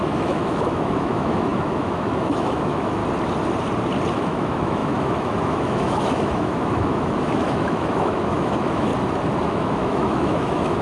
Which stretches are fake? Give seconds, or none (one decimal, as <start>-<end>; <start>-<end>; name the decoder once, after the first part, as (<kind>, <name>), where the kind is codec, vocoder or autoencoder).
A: 0.0-3.0 (autoencoder, DAC-VAE); 4.1-8.9; 9.4-10.8